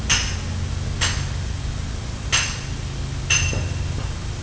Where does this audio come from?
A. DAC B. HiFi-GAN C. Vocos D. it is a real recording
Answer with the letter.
D